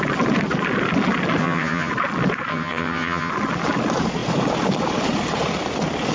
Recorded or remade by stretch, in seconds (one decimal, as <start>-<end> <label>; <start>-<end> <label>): 0.0-1.4 recorded; 1.4-1.9 remade; 1.9-2.5 recorded; 2.5-3.3 remade; 3.3-6.1 recorded